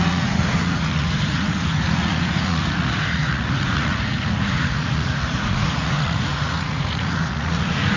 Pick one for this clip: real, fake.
fake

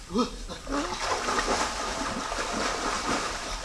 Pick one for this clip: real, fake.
real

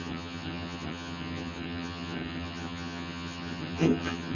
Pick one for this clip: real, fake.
fake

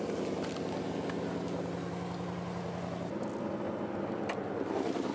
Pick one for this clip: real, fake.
real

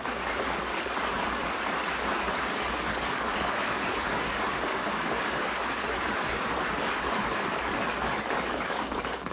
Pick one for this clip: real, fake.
fake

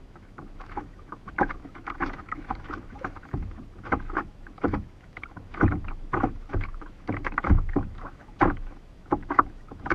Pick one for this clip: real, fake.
fake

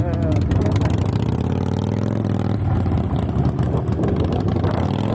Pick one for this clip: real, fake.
real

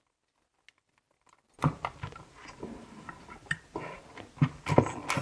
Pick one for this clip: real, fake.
real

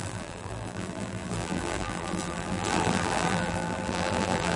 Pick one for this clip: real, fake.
fake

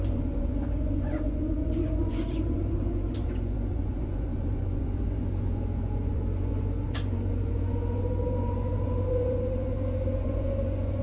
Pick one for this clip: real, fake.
fake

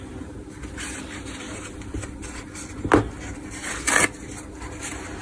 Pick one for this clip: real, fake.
real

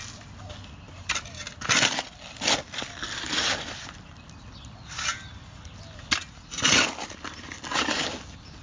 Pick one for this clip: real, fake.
real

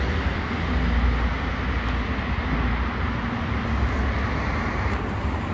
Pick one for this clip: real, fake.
real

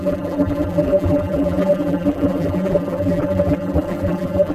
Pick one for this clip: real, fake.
fake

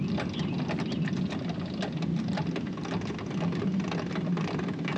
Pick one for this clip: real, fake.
real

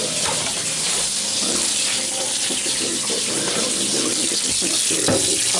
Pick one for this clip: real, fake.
real